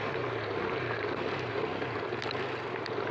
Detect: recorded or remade recorded